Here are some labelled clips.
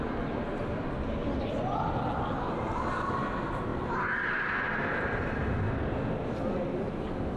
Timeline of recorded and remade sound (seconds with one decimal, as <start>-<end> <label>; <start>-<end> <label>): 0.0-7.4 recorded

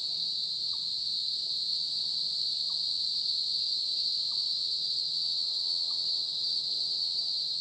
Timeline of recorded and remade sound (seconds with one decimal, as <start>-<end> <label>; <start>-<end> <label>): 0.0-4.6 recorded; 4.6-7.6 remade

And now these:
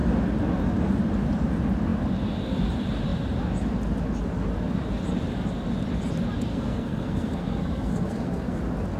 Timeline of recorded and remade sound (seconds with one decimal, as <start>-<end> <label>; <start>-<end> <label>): 0.0-6.5 recorded; 6.5-8.6 remade; 8.6-9.0 recorded

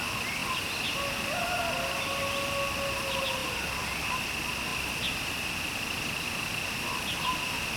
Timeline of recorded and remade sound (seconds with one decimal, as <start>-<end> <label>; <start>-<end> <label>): 0.0-7.8 recorded